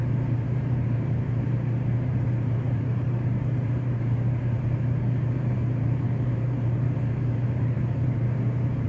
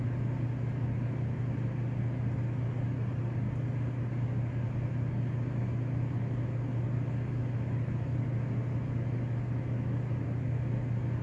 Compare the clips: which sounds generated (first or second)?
first